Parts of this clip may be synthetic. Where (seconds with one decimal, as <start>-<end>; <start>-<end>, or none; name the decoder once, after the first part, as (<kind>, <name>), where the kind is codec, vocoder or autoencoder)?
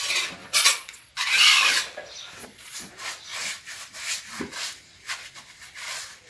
0.4-1.1 (vocoder, Vocos); 2.4-2.9